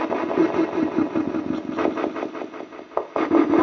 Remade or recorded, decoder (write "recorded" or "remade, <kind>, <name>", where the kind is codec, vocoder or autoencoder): recorded